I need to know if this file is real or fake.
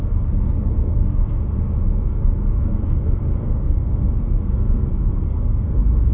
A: fake